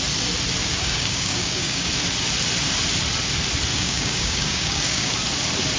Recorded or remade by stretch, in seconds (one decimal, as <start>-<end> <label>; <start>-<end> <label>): 0.0-0.6 recorded; 0.6-1.9 remade; 1.9-3.7 recorded; 3.7-5.1 remade; 5.1-5.8 recorded